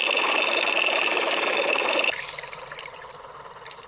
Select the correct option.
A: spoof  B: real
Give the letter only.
B